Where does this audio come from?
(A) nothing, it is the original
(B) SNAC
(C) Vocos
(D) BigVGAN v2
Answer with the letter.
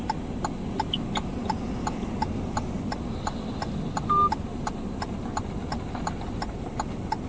A